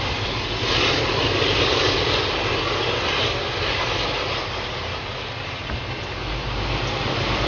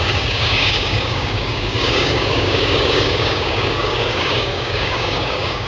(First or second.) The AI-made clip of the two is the second